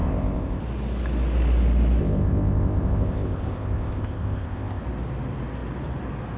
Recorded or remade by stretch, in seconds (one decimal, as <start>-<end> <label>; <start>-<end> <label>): 0.0-0.6 remade; 0.6-2.0 recorded; 2.0-4.8 remade; 4.8-6.4 recorded